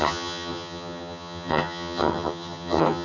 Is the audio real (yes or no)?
no